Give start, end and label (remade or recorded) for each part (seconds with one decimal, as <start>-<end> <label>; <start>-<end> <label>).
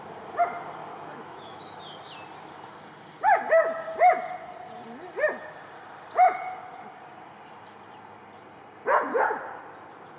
0.0-0.9 recorded; 0.9-1.8 remade; 1.8-10.2 recorded